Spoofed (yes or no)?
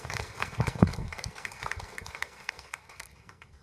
yes